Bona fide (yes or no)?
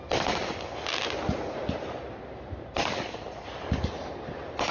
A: yes